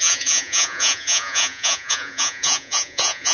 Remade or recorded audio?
remade